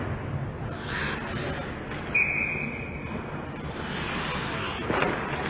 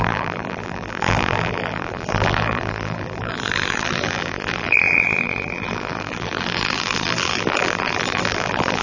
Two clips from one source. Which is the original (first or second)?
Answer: first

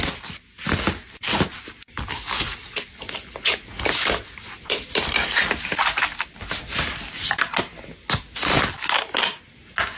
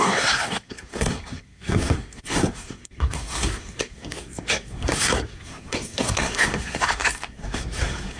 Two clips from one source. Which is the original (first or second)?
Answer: first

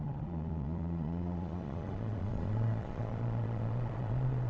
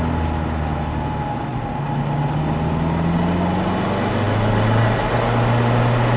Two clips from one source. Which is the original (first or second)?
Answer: second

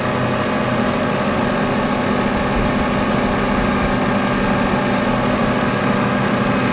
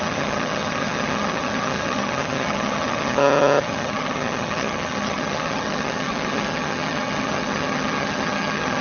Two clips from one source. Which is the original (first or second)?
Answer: first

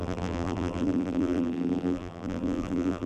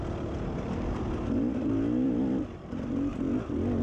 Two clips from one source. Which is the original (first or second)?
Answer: second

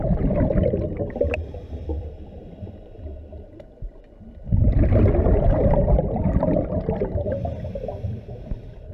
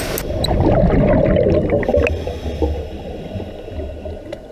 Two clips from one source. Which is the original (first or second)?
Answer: second